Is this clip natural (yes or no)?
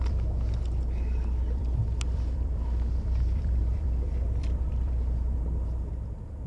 no